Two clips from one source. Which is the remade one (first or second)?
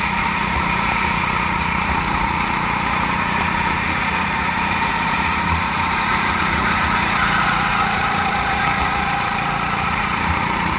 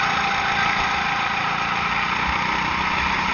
first